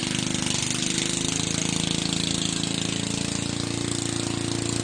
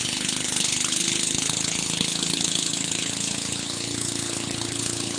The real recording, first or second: first